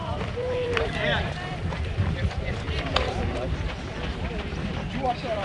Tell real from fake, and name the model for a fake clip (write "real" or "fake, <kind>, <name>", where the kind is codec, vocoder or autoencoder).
fake, vocoder, BigVGAN v2